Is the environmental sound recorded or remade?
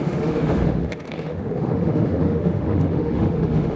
remade